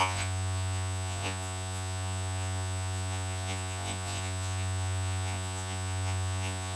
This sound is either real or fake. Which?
fake